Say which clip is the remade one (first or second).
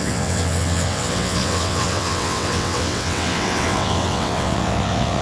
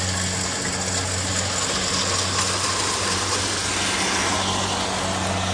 first